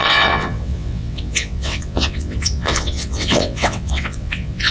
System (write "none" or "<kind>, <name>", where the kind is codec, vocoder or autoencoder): vocoder, WaveNeXt